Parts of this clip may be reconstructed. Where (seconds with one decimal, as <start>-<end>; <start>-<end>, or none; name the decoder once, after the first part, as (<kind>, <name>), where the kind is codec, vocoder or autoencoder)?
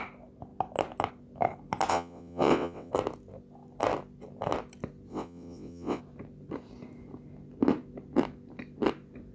1.9-2.9 (vocoder, WaveNeXt); 5.1-6.0